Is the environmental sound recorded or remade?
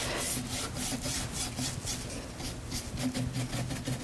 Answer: recorded